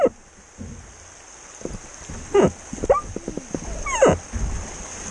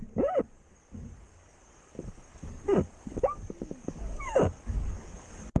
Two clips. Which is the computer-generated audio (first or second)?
second